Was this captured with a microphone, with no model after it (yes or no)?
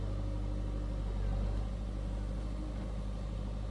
yes